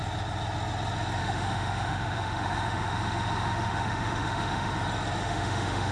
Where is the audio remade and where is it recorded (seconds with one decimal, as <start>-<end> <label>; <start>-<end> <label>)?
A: 0.0-1.2 recorded; 1.2-4.7 remade; 4.7-5.2 recorded; 5.2-5.9 remade